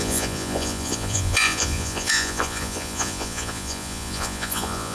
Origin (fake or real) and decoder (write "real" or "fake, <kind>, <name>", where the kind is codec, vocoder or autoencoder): fake, vocoder, Vocos